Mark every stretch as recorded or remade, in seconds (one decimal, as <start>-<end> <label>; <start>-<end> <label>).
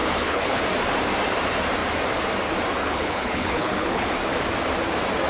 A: 0.0-0.6 remade; 0.6-2.8 recorded; 2.8-4.1 remade; 4.1-5.3 recorded